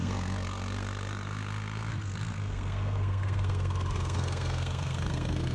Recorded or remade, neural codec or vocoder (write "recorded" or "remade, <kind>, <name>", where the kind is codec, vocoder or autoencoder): remade, codec, SNAC